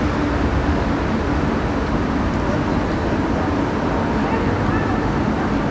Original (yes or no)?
yes